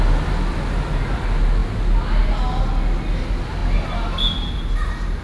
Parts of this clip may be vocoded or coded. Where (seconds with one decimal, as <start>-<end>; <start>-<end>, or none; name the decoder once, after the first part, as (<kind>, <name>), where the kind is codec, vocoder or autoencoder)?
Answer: none